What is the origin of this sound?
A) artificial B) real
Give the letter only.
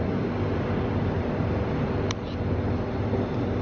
B